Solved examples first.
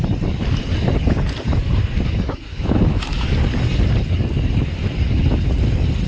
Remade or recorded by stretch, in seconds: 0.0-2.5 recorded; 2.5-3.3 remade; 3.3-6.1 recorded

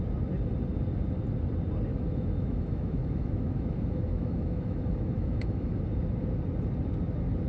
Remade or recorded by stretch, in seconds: 0.0-1.9 recorded; 1.9-5.8 remade; 5.8-7.5 recorded

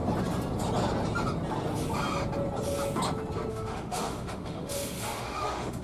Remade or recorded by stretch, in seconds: 0.0-3.5 recorded; 3.5-5.8 remade